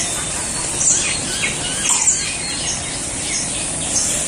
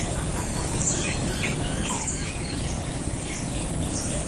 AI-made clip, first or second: second